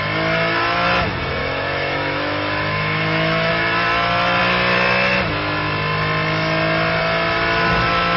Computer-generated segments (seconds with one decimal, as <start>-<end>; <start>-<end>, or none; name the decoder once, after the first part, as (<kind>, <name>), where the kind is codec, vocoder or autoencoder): 1.4-3.5 (autoencoder, DAC-VAE)